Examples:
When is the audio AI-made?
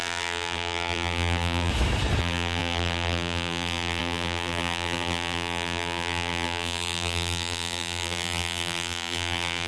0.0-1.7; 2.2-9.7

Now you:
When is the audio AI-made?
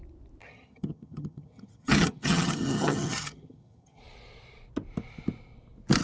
0.4-4.0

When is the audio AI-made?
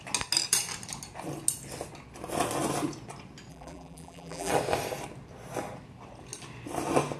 3.5-4.5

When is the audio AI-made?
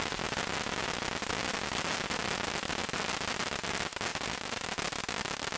4.1-4.8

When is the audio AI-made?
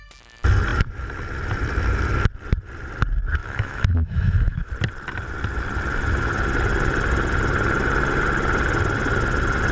3.4-4.7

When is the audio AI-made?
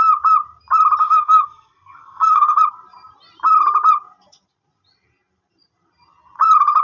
1.0-2.6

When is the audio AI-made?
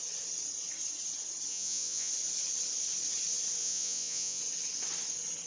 1.5-2.1; 3.6-4.4